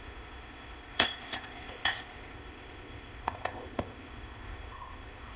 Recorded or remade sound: remade